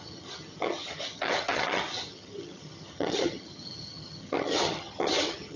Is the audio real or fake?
fake